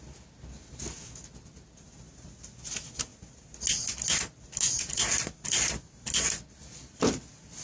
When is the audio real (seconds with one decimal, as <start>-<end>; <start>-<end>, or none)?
0.0-7.6